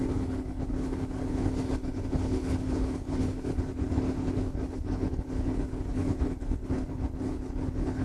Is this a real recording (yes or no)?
no